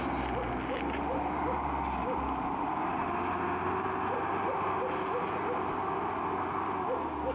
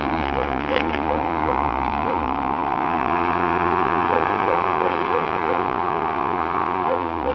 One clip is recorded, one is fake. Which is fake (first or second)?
second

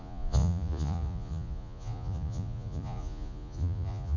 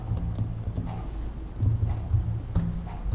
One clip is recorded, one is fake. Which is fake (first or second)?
first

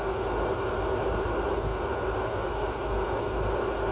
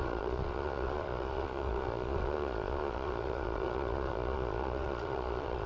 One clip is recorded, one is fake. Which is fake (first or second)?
second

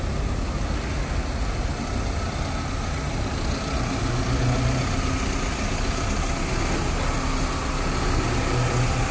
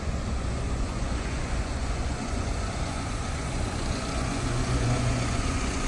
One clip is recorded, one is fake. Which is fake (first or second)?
second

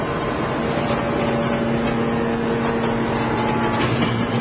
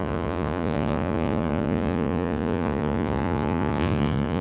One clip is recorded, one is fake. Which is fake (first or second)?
second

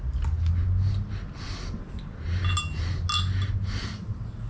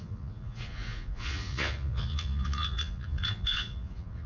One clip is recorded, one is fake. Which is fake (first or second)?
second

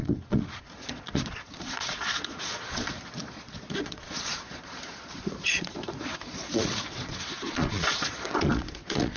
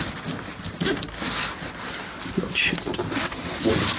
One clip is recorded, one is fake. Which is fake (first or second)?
first